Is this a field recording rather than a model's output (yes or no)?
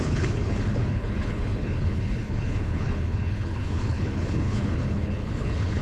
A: no